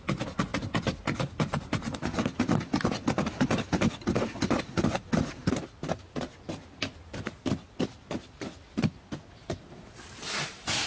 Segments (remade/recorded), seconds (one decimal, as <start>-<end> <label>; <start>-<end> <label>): 0.0-10.9 recorded